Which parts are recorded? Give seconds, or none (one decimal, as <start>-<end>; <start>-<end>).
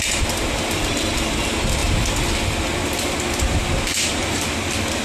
0.0-3.9; 4.5-5.0